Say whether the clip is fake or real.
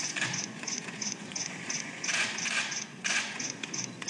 fake